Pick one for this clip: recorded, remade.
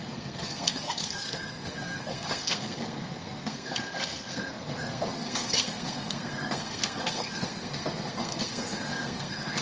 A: remade